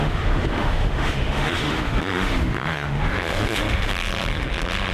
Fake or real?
fake